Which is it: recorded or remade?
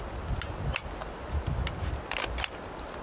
recorded